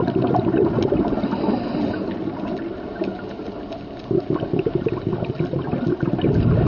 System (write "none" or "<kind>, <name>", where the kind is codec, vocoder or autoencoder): none